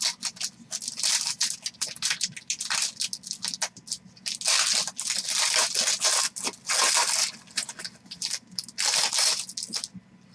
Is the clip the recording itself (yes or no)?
yes